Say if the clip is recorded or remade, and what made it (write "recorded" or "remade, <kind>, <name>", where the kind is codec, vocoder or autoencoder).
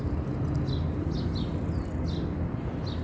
recorded